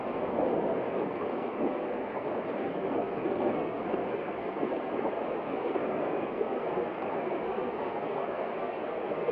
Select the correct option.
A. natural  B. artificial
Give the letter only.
B